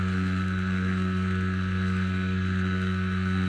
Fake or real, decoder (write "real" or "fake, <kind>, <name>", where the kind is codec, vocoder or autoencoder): fake, codec, SNAC